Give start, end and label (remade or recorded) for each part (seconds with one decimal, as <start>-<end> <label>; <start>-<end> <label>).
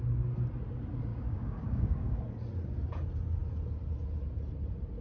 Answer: 0.0-1.1 recorded; 1.1-2.2 remade; 2.2-5.0 recorded